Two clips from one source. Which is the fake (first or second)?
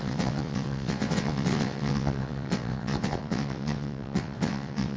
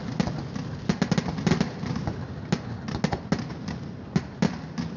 first